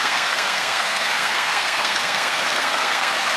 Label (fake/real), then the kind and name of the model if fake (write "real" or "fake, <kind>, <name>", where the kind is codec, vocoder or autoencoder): fake, codec, SNAC